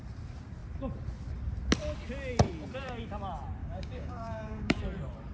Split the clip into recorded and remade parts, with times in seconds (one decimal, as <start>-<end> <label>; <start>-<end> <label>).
0.0-3.6 recorded; 3.6-4.8 remade; 4.8-5.3 recorded